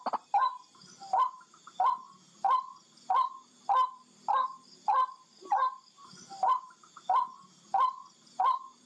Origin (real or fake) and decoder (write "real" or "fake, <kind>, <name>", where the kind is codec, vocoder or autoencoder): real